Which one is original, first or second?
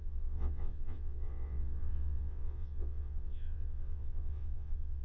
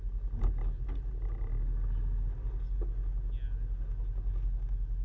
second